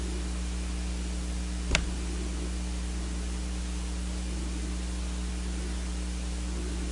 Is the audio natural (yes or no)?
yes